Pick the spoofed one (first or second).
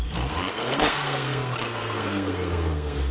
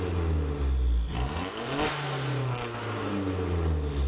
first